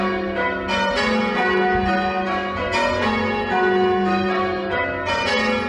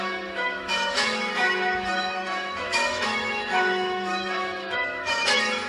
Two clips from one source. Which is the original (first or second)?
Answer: first